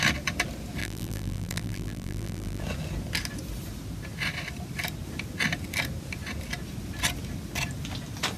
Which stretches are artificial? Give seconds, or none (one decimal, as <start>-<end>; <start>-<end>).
0.8-2.6

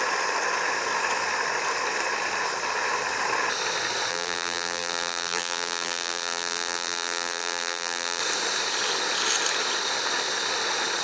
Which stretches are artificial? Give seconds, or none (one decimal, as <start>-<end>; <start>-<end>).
4.1-8.2

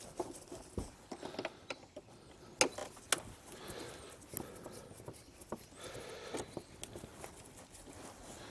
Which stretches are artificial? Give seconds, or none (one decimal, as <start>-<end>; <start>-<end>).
none

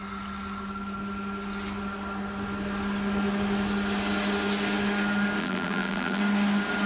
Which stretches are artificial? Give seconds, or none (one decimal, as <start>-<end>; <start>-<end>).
5.4-6.2

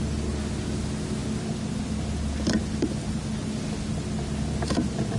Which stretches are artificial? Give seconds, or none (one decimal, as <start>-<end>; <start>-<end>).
none